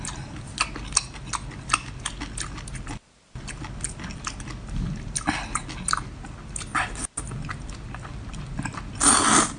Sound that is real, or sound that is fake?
real